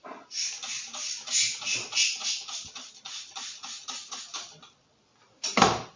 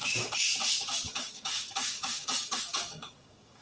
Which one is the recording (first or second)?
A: first